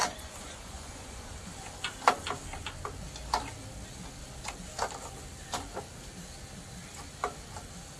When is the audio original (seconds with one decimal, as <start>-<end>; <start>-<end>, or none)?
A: 1.5-8.0